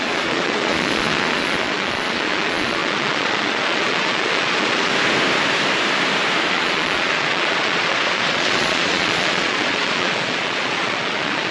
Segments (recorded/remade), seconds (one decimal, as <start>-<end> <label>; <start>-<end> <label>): 0.0-4.9 remade; 4.9-6.5 recorded; 6.5-11.5 remade